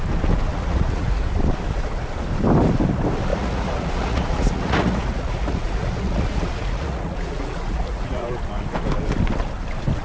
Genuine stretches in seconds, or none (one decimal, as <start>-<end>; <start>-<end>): 0.0-0.5; 1.2-3.3; 8.3-10.0